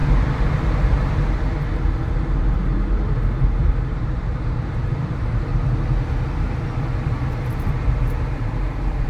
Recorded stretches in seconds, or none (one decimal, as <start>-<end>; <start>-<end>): 0.0-2.9; 5.5-8.3